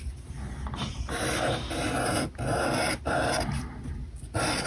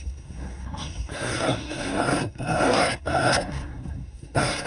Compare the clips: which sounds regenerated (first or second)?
second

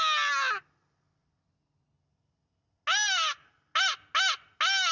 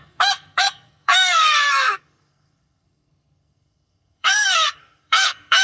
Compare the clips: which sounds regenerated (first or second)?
second